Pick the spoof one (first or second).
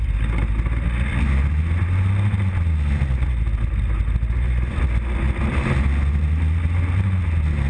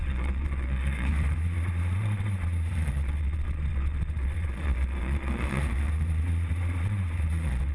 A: second